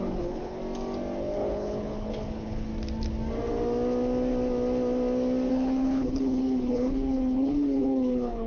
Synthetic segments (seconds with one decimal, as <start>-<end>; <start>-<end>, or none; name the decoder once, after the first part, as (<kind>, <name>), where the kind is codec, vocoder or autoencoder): 0.0-0.6 (codec, HILCodec); 1.2-2.7; 5.5-8.5